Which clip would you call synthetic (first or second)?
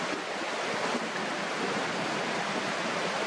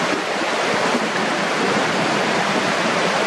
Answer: second